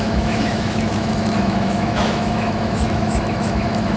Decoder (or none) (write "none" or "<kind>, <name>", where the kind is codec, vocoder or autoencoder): autoencoder, DAC-VAE